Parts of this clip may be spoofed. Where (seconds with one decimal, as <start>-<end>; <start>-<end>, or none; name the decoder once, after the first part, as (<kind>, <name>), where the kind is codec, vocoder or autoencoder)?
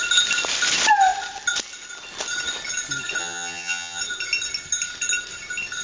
3.2-4.0 (vocoder, HiFi-GAN)